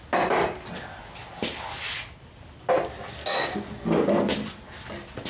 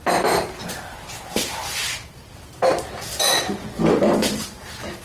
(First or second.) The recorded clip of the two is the first